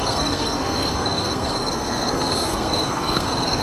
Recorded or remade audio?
remade